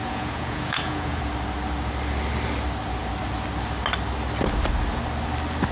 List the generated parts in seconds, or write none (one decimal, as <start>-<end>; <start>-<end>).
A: 0.0-1.2